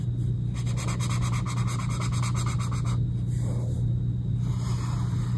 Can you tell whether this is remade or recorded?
recorded